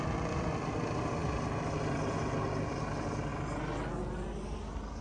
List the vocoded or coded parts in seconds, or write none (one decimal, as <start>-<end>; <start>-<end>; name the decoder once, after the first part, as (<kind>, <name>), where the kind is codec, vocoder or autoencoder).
none